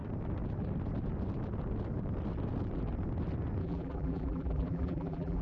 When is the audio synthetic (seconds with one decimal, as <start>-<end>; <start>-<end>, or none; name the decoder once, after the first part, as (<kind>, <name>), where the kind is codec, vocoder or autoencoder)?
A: 3.6-5.4 (vocoder, BigVGAN v2)